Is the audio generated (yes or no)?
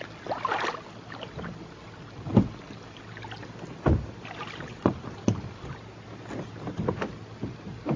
no